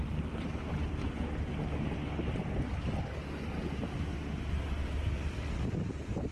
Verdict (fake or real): real